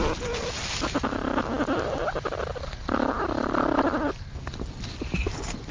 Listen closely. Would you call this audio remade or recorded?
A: recorded